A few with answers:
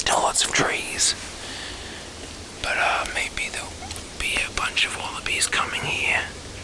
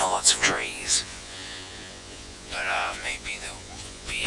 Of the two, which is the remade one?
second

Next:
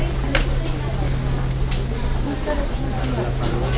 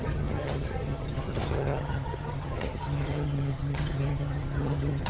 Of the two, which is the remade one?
second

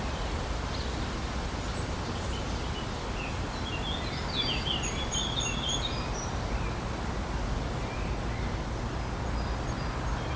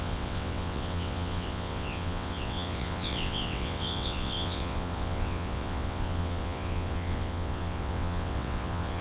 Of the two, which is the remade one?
second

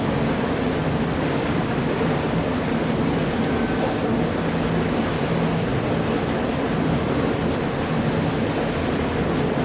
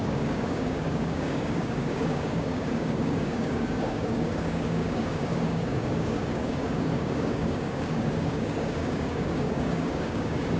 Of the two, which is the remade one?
second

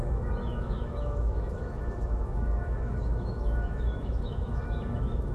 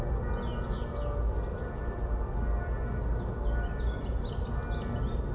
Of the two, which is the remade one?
first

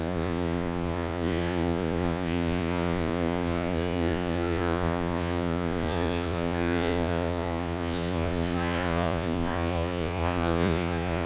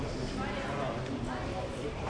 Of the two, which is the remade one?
first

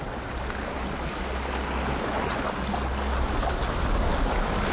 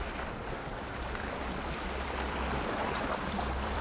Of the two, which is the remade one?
second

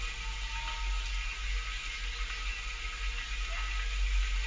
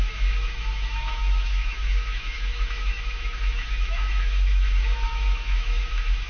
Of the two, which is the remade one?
second